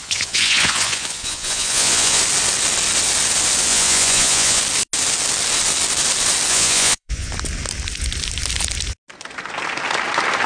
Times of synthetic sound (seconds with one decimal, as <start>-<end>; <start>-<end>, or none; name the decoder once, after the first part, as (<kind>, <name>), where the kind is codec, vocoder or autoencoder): 0.0-2.2 (vocoder, Vocos); 3.7-4.6; 6.5-7.3